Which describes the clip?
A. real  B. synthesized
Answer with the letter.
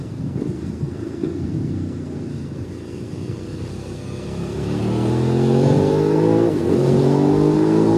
B